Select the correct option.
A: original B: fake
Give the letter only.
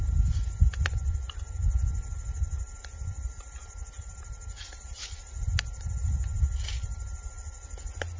A